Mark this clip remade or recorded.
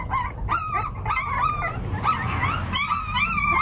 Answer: recorded